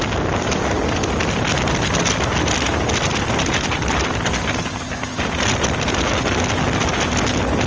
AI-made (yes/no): no